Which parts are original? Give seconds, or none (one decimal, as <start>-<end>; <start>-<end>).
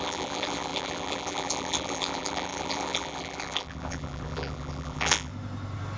5.3-6.0